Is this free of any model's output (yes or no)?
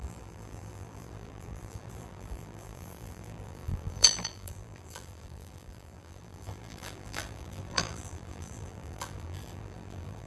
no